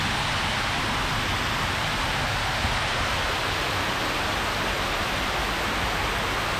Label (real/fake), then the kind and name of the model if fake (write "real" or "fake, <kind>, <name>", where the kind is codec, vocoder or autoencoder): real